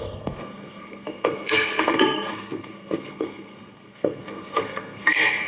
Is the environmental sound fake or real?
fake